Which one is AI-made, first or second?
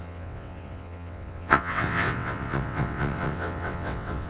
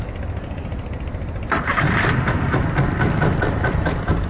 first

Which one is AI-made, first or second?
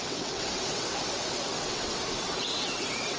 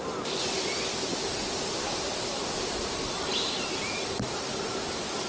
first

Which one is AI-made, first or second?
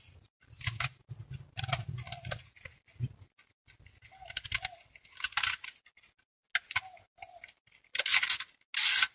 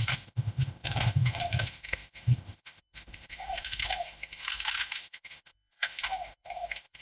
second